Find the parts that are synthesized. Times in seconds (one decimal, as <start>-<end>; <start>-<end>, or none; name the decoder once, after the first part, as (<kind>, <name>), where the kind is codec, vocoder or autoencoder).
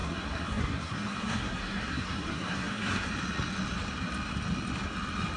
0.0-3.1 (codec, SNAC)